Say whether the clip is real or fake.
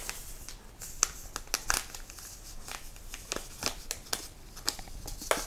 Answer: real